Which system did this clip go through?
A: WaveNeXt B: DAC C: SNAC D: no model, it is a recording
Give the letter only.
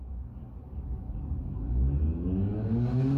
B